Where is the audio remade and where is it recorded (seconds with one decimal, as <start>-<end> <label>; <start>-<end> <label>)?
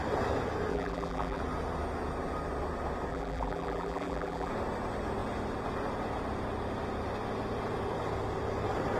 0.0-0.7 recorded; 0.7-1.4 remade; 1.4-3.1 recorded; 3.1-4.5 remade; 4.5-9.0 recorded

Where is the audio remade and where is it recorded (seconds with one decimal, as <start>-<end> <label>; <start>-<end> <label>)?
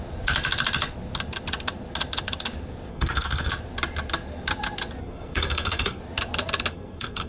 0.0-2.9 recorded; 2.9-3.5 remade; 3.5-5.0 recorded; 5.0-6.0 remade; 6.0-6.7 recorded; 6.7-7.3 remade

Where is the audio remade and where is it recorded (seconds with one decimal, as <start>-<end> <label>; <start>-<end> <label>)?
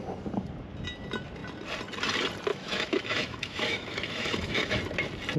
0.0-2.5 recorded; 2.5-4.8 remade; 4.8-5.4 recorded